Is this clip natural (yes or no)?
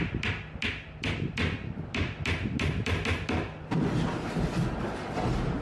yes